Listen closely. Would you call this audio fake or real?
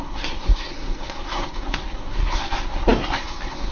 fake